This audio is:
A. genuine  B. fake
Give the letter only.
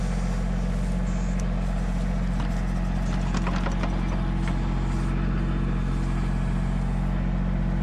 A